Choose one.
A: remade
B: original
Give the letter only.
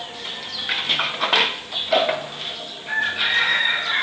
B